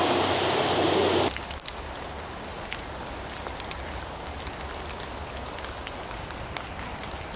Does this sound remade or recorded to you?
recorded